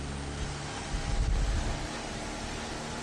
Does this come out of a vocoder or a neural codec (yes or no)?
no